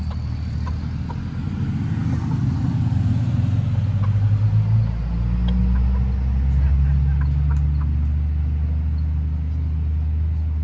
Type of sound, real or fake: real